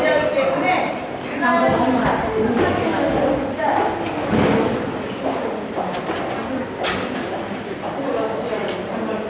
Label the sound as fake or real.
real